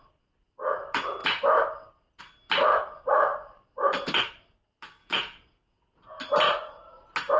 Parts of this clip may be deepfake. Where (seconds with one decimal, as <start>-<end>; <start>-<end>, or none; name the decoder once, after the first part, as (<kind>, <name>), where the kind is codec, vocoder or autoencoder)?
5.0-6.2 (vocoder, Vocos)